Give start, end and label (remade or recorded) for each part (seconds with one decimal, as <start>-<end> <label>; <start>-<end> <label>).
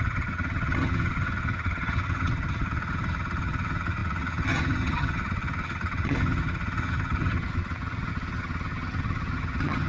0.0-9.9 remade